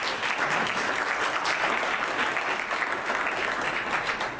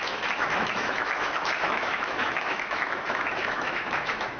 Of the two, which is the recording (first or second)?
first